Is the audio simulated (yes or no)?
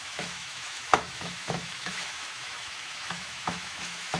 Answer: yes